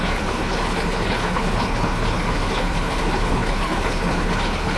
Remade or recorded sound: remade